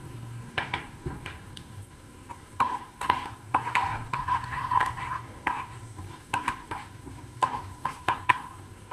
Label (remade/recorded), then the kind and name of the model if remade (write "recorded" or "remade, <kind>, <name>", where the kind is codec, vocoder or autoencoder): remade, codec, SNAC